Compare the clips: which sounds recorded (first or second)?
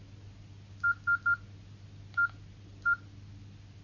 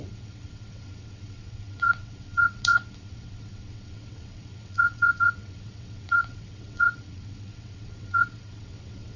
first